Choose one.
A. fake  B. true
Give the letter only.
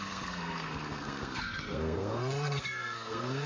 A